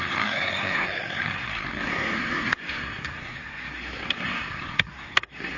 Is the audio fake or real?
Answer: fake